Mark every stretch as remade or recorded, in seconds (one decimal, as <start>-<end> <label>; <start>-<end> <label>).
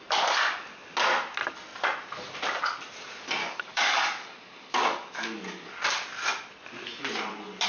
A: 0.0-3.4 recorded; 3.4-5.7 remade; 5.7-7.7 recorded